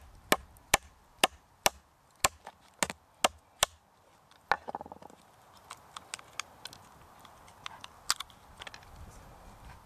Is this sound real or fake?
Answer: real